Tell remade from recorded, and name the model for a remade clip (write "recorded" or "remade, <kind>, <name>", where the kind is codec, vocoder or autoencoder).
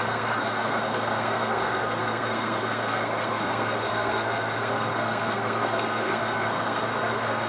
remade, codec, SNAC